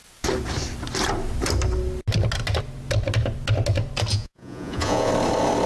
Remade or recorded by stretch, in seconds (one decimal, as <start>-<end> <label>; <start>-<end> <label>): 0.0-4.1 recorded; 4.1-5.1 remade; 5.1-5.7 recorded